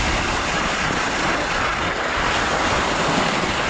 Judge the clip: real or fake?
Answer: real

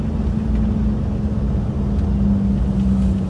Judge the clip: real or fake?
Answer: real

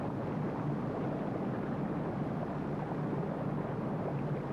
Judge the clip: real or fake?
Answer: real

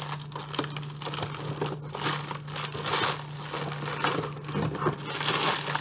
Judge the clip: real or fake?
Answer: real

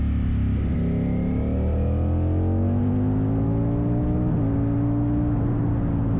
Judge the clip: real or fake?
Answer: real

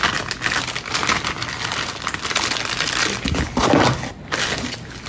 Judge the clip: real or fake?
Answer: real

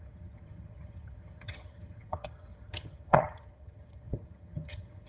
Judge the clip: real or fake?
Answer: fake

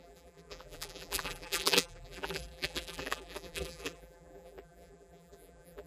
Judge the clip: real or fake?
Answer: fake